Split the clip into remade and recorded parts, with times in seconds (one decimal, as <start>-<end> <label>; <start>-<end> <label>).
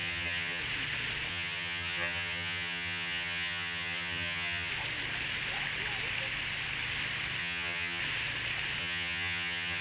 0.0-0.6 remade; 0.6-1.3 recorded; 1.3-4.7 remade; 4.7-7.4 recorded; 7.4-8.0 remade; 8.0-8.8 recorded; 8.8-9.8 remade